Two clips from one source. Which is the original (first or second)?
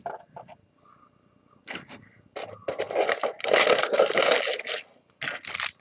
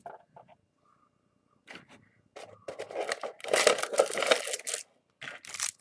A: second